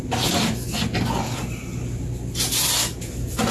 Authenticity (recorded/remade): recorded